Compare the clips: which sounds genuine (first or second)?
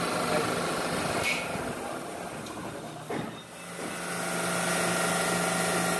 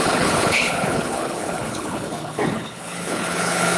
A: first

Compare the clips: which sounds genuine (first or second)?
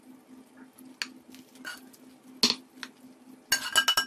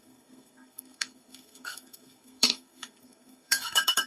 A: first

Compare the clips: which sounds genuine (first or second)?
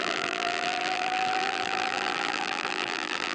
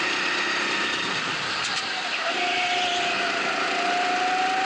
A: second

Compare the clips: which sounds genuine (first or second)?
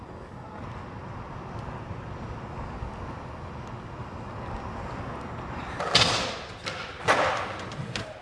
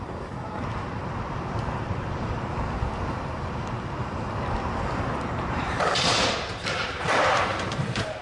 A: first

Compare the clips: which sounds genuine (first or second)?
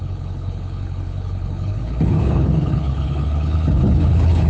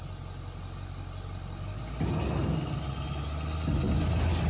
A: second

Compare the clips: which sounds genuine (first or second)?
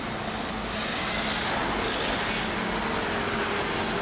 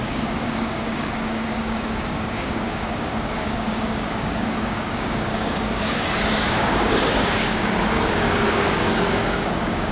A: first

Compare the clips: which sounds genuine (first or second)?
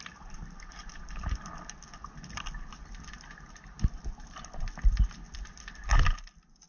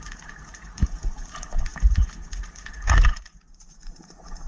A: first